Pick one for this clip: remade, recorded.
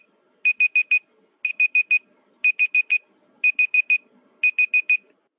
recorded